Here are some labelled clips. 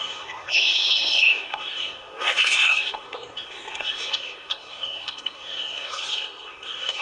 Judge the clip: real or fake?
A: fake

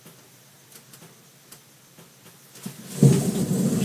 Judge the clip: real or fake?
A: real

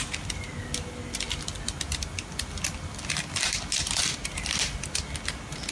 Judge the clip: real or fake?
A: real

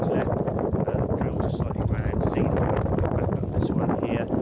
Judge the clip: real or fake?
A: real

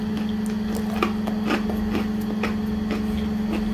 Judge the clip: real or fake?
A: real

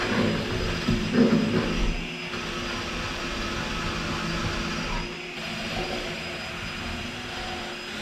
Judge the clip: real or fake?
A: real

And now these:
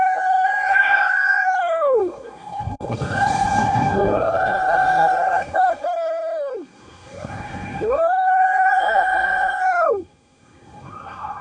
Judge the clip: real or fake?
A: fake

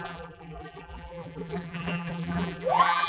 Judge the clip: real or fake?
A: fake